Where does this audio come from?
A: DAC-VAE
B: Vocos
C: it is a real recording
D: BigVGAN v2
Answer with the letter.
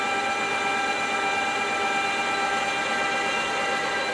C